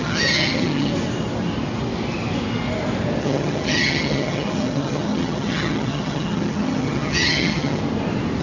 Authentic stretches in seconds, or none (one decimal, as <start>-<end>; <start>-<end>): 0.9-3.2; 7.8-8.4

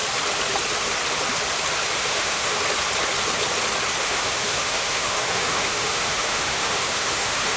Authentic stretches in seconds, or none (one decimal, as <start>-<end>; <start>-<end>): 0.0-2.0; 2.6-4.0